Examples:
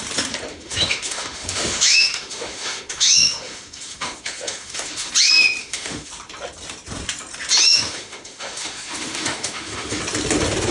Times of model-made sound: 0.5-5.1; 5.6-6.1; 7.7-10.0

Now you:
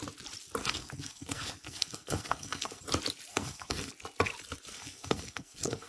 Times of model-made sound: 0.6-2.8; 3.3-3.9; 4.7-5.9

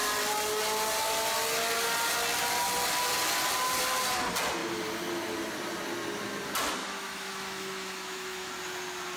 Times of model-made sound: 6.8-8.5

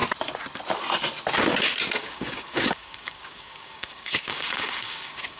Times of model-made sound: 2.0-5.4

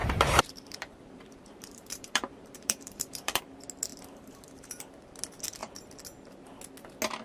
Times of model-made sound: 0.0-3.4; 3.9-4.9

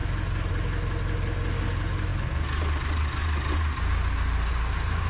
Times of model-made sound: none

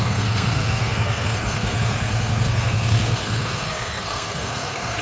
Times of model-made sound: 0.0-5.0

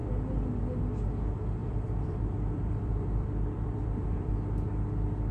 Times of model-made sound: 1.6-4.3